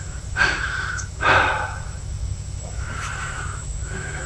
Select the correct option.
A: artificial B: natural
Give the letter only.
A